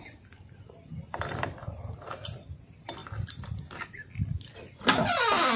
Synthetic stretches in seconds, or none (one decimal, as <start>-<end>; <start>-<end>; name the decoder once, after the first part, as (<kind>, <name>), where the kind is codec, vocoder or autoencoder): none